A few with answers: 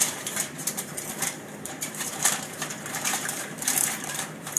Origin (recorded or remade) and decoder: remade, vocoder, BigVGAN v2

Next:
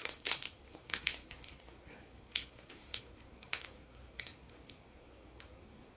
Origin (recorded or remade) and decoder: remade, codec, SNAC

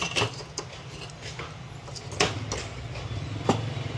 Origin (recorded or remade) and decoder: recorded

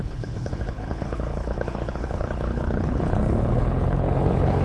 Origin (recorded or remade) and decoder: remade, codec, HILCodec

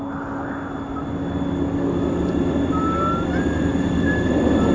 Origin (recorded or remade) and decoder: recorded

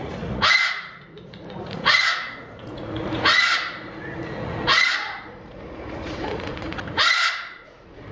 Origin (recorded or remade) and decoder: remade, vocoder, Vocos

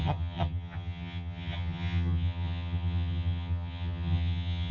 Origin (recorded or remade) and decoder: remade, vocoder, HiFi-GAN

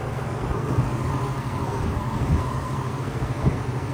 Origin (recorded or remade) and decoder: remade, codec, SNAC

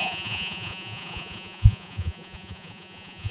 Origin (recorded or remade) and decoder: remade, vocoder, Vocos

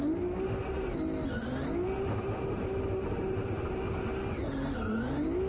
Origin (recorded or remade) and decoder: recorded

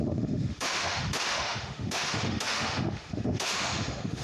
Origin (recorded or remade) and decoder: remade, autoencoder, DAC-VAE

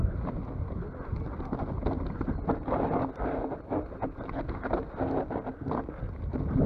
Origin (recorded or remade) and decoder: recorded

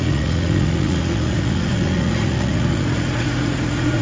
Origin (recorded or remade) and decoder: remade, vocoder, Vocos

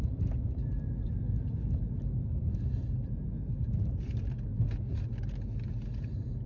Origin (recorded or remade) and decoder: recorded